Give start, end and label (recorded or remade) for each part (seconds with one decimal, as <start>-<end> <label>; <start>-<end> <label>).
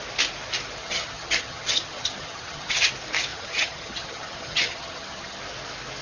0.0-0.8 recorded; 0.8-2.9 remade; 2.9-3.3 recorded; 3.3-5.4 remade; 5.4-6.0 recorded